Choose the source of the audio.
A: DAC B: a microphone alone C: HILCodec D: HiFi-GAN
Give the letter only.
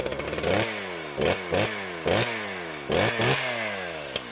B